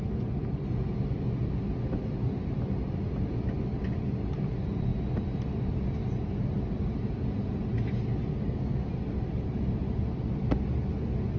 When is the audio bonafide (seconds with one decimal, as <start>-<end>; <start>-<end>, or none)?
0.0-8.3; 8.9-11.4